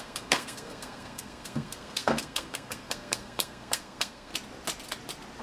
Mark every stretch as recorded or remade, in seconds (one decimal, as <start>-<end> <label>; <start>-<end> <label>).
0.0-4.3 remade; 4.3-5.4 recorded